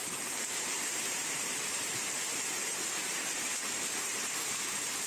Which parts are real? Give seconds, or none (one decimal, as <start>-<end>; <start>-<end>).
2.8-5.1